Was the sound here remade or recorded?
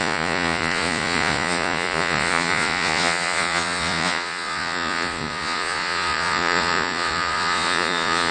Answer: remade